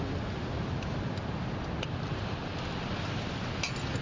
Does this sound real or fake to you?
real